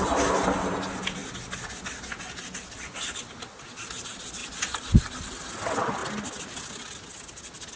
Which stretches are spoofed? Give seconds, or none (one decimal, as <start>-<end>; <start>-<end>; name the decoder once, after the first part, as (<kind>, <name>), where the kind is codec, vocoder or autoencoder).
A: none